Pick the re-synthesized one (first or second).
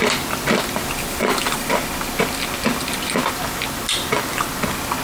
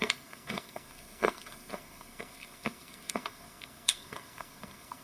second